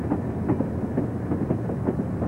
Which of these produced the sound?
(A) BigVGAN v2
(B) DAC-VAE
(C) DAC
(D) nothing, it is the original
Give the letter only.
D